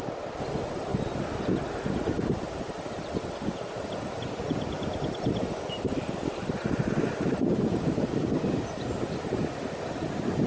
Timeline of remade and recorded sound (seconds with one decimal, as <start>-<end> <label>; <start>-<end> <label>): 0.0-10.5 remade